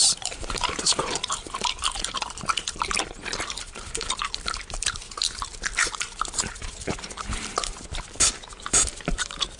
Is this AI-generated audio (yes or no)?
yes